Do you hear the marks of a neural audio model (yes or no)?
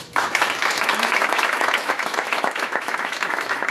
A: yes